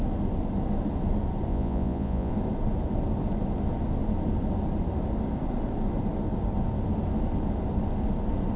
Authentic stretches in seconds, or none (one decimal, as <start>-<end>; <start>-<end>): 0.0-1.5; 2.3-8.6